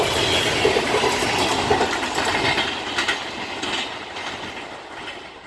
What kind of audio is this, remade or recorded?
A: recorded